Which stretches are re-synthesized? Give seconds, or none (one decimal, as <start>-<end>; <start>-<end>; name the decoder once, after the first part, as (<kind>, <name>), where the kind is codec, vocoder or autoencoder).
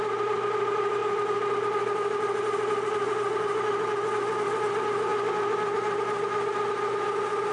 none